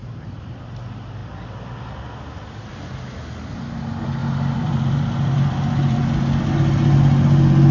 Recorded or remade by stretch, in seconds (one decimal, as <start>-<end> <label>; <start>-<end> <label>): 0.0-0.6 remade; 0.6-4.2 recorded; 4.2-6.1 remade; 6.1-7.7 recorded